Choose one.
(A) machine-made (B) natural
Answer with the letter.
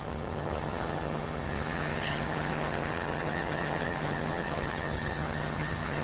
A